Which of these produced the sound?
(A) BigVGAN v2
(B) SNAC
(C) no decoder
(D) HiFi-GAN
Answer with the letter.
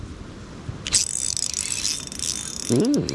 C